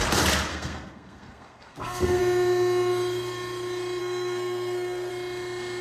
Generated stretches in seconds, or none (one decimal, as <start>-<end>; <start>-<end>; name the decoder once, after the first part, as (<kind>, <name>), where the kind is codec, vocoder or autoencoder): 0.5-2.2 (codec, SNAC); 4.0-5.1